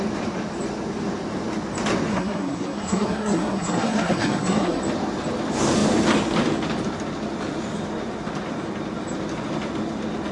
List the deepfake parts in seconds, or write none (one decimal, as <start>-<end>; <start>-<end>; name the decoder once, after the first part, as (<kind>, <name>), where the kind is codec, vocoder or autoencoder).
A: 2.1-4.8 (codec, SNAC)